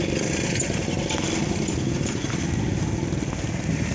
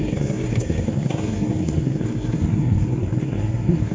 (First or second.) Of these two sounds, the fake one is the second